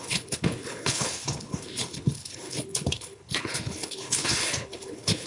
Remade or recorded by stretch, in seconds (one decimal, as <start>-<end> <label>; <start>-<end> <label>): 0.0-5.3 remade